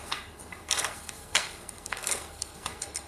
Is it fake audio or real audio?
fake